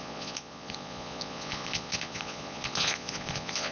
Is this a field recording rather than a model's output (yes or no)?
no